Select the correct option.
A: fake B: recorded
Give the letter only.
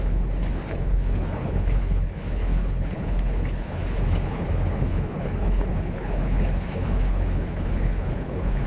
A